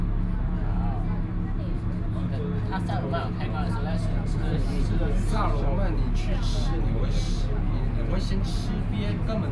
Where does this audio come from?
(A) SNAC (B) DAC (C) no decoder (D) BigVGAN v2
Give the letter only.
C